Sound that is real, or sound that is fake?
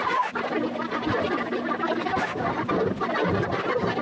real